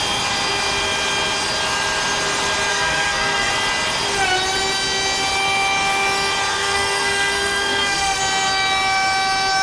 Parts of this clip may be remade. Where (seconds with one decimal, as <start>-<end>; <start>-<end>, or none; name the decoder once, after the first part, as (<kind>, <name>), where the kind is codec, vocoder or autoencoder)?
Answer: 2.7-3.5 (codec, SNAC); 6.5-8.2